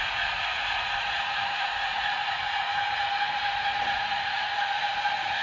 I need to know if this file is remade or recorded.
remade